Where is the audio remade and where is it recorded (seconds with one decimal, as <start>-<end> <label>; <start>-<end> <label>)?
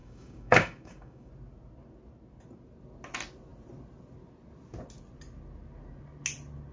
0.0-1.3 remade; 1.3-6.7 recorded